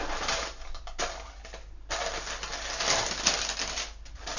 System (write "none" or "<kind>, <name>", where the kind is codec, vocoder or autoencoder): none